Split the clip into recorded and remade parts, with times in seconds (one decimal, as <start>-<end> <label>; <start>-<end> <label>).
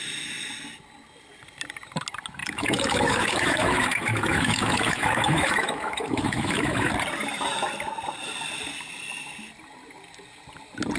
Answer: 0.0-2.4 recorded; 2.4-6.9 remade; 6.9-11.0 recorded